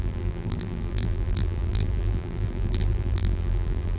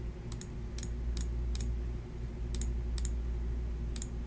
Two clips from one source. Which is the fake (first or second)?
first